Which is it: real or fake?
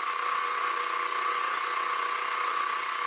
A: fake